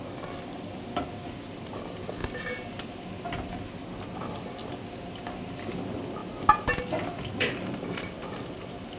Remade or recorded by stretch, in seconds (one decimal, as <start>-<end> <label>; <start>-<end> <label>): 0.0-9.0 recorded